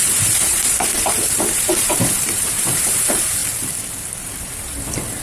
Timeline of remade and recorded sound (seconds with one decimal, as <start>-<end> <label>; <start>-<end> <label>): 0.0-3.4 remade; 3.4-5.2 recorded